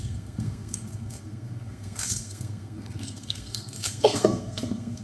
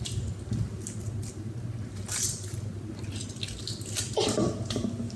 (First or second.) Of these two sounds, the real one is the second